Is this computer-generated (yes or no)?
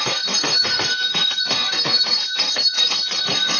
yes